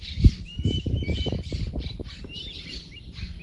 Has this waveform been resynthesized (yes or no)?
yes